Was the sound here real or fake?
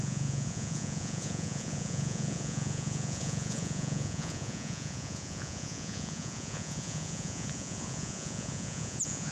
fake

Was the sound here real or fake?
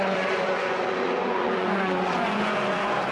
fake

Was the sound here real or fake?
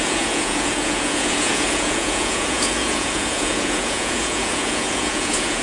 fake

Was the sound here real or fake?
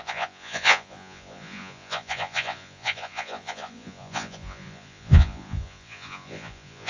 fake